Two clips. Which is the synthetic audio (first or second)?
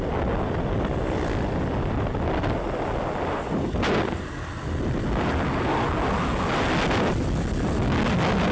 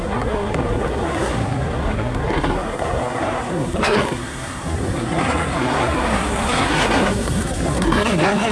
second